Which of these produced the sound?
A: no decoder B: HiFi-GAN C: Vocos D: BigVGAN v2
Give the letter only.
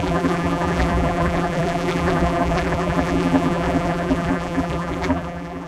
D